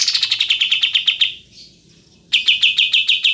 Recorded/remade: recorded